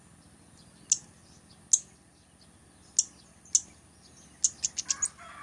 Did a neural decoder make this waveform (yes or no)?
no